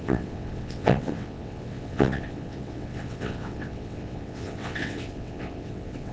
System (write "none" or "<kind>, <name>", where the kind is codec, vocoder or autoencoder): vocoder, WaveNeXt